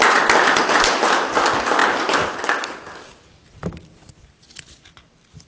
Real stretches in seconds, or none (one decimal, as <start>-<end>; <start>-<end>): 0.0-5.5